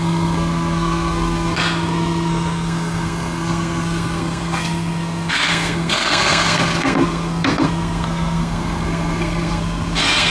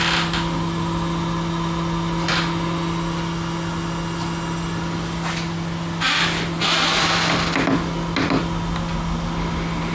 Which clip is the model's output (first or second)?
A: first